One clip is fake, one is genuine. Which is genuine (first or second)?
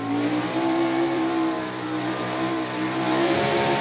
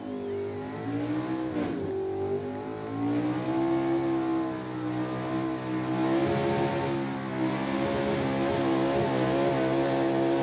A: second